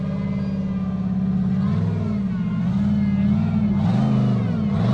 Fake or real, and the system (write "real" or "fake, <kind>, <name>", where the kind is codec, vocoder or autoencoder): real